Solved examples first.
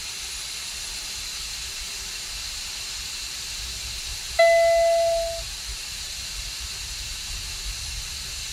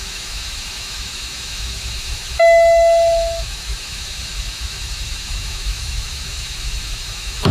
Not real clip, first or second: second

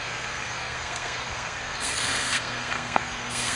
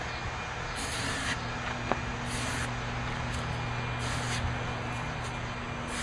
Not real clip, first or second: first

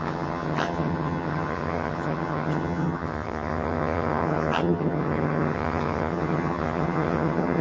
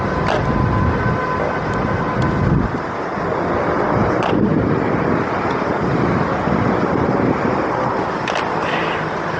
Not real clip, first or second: first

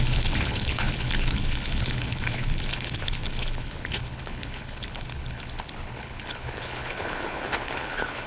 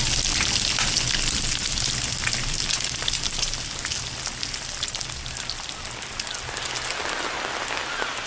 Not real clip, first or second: first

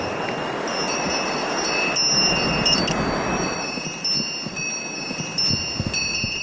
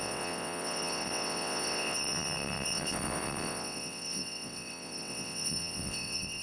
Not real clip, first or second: second